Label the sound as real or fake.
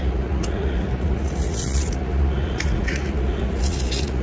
fake